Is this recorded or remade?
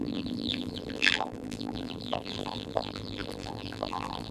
remade